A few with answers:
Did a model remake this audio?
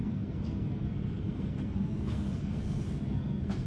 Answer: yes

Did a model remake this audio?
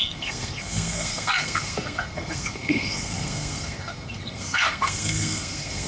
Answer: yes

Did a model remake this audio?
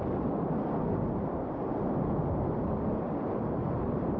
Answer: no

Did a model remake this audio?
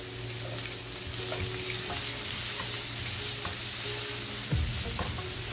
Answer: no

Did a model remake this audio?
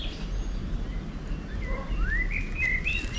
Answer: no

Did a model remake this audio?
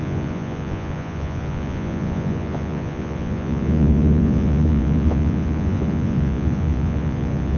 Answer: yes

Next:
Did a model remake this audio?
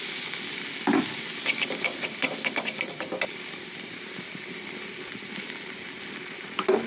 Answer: no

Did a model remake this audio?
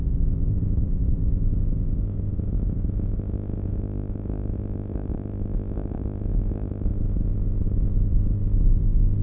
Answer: yes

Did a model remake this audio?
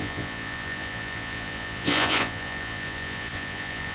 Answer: yes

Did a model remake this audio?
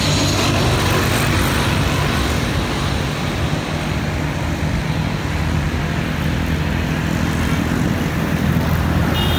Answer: no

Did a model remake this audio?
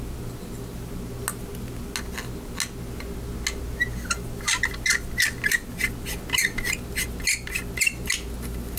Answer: no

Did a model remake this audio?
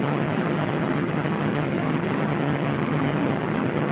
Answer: yes